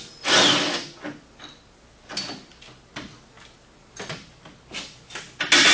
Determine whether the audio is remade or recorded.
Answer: recorded